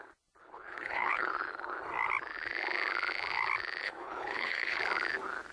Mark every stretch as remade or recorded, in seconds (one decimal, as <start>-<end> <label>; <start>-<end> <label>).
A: 0.0-0.4 recorded; 0.4-1.3 remade; 1.3-3.8 recorded; 3.8-4.8 remade; 4.8-5.5 recorded